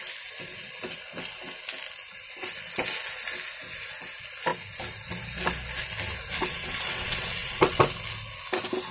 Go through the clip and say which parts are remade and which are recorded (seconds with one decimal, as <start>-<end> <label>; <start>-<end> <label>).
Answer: 0.0-6.4 recorded; 6.4-7.8 remade; 7.8-8.9 recorded